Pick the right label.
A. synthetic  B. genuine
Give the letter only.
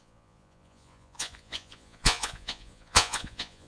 A